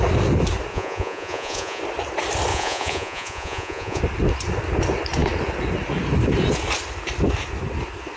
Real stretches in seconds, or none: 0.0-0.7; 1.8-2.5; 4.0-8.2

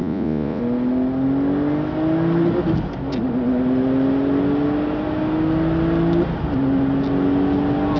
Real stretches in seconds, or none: 0.6-8.0

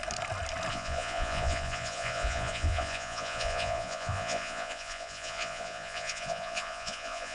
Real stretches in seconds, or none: 0.0-0.7